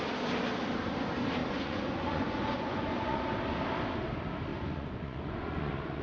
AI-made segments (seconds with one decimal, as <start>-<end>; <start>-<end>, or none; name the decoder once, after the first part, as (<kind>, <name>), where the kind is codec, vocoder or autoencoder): 1.4-3.2 (vocoder, Vocos); 4.5-6.0